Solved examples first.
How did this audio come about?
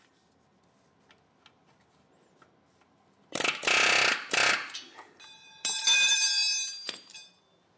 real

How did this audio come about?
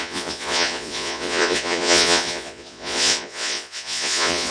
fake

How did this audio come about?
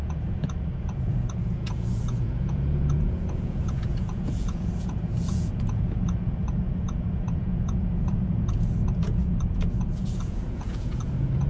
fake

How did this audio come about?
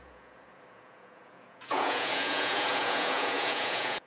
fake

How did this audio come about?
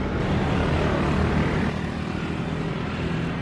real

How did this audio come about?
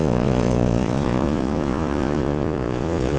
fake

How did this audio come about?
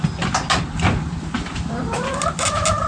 real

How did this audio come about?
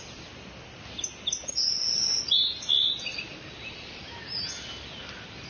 real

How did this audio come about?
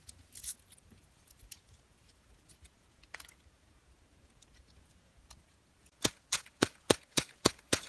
fake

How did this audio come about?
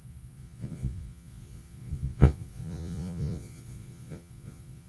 fake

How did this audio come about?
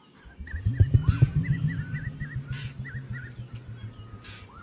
real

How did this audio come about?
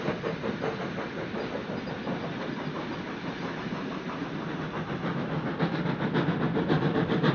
real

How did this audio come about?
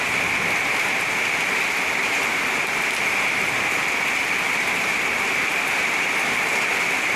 real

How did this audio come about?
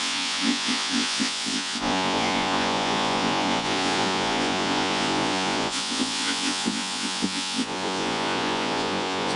fake